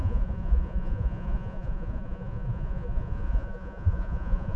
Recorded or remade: remade